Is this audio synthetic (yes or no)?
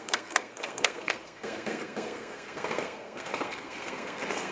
yes